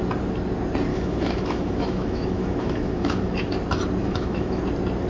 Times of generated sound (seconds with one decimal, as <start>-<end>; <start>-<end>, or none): 0.9-3.5; 4.0-4.6